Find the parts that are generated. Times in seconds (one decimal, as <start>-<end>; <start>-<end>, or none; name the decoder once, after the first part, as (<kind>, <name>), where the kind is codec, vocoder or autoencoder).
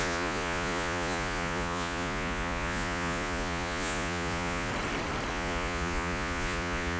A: 0.0-4.7 (vocoder, Vocos); 5.3-7.0